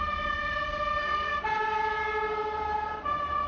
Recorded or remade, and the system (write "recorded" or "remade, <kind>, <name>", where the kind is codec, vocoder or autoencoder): remade, vocoder, BigVGAN v2